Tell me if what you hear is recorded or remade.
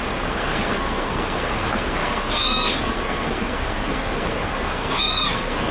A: remade